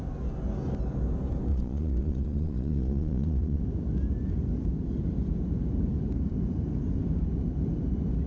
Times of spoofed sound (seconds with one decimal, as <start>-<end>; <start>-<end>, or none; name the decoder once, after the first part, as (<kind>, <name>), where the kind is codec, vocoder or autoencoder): 1.5-3.6 (vocoder, Vocos)